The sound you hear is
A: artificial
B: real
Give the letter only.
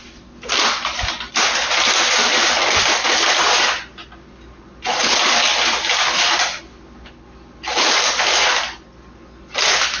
B